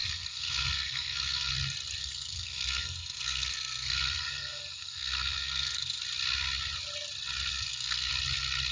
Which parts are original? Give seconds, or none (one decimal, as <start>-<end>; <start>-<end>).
1.5-2.0; 6.0-7.5; 8.1-8.7

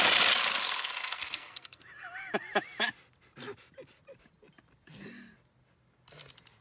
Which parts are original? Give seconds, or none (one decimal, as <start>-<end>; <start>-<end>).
0.0-0.6; 1.8-6.6

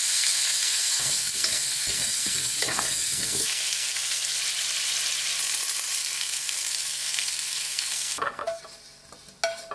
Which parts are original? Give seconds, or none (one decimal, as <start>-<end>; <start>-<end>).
4.4-6.0; 8.6-9.7

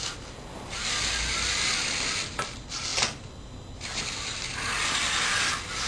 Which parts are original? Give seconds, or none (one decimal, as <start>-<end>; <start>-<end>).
0.0-5.9

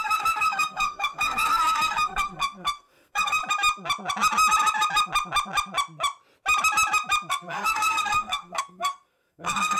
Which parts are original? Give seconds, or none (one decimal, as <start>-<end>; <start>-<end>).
3.4-7.3